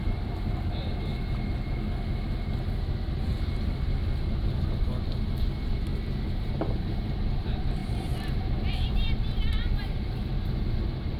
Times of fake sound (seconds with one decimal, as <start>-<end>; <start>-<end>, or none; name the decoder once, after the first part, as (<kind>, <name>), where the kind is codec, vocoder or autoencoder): 0.0-1.1 (vocoder, BigVGAN v2); 6.3-11.2